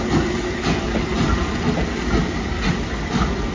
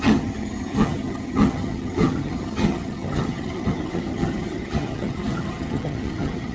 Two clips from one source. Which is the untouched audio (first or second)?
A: first